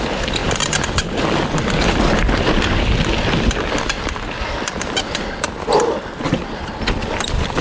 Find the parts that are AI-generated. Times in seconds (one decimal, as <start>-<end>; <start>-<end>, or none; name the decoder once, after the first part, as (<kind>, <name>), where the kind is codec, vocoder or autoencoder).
none